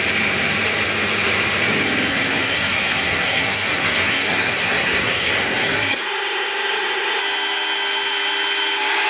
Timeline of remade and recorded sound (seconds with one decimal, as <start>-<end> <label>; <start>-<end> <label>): 0.0-2.1 recorded; 2.1-7.2 remade; 7.2-9.1 recorded